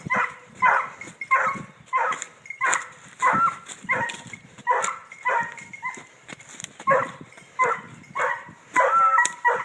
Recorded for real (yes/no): yes